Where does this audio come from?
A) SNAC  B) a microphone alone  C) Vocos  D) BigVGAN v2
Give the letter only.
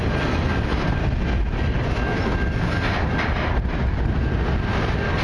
B